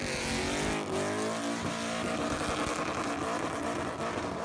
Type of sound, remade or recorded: recorded